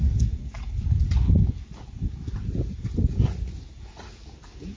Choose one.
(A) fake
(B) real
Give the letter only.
B